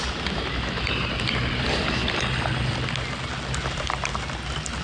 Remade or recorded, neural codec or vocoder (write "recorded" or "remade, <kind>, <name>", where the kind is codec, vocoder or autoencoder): recorded